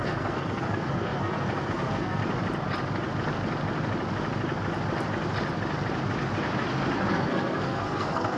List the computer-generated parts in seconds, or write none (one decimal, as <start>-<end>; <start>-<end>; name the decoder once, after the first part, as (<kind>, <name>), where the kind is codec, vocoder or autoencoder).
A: 0.0-2.2 (codec, SNAC); 7.1-8.4